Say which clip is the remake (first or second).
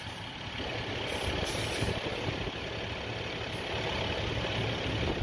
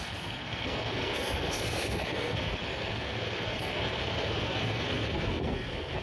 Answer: second